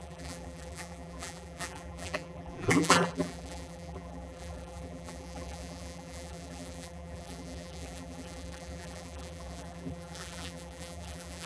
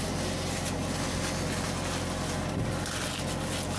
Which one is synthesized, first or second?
first